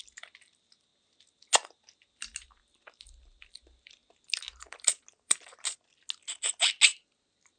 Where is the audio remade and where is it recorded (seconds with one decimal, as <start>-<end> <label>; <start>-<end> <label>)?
0.0-7.6 recorded